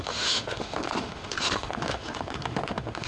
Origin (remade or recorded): remade